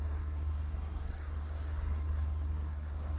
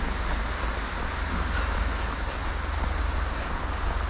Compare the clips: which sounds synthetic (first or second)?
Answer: first